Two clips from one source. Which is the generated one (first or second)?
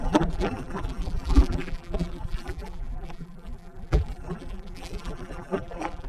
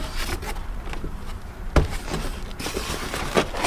first